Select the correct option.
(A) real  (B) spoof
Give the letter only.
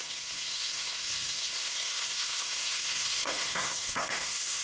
B